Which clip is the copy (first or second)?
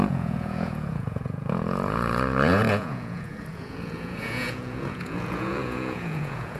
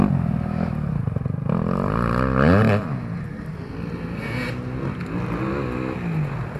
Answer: first